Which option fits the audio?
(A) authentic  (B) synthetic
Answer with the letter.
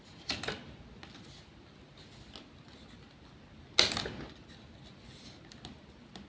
A